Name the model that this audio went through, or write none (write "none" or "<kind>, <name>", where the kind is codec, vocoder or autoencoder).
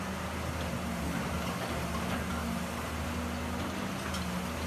none